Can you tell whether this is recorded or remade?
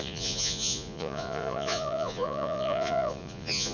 remade